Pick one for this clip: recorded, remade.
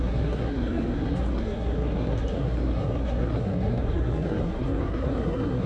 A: remade